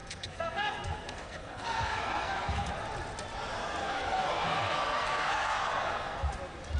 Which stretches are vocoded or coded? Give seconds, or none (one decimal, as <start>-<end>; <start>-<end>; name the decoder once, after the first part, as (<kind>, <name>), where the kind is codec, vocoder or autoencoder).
0.0-2.7 (codec, SNAC); 3.8-6.3